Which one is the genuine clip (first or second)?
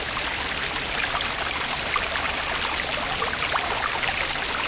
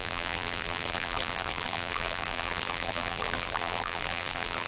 first